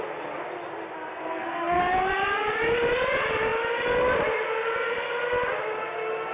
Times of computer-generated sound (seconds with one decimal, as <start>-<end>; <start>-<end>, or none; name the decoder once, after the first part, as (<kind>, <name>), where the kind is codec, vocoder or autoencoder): 1.1-1.8 (codec, SNAC)